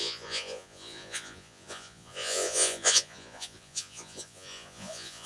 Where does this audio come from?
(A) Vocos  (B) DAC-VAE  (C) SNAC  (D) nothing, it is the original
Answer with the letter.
A